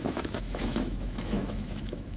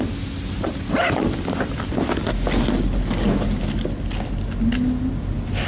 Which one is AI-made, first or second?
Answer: first